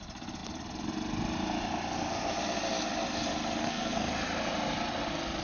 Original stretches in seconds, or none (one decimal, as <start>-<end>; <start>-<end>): 0.0-3.6; 4.1-5.4